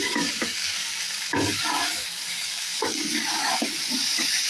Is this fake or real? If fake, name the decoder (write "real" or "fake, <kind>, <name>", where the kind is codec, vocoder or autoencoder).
fake, codec, DAC